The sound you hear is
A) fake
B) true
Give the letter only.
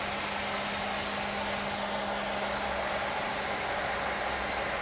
B